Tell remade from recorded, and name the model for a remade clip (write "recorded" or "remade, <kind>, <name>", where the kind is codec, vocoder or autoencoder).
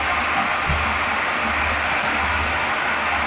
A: recorded